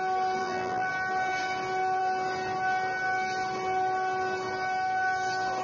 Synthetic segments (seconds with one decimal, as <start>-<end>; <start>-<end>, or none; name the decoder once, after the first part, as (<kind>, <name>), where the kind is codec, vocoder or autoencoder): 0.4-0.9 (vocoder, BigVGAN v2)